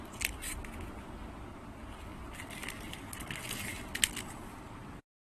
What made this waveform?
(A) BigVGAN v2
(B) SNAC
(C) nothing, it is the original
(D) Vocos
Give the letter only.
C